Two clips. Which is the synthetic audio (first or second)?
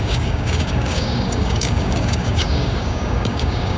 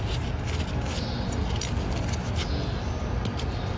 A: first